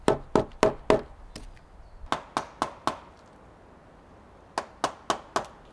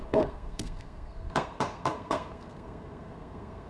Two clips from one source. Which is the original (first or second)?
first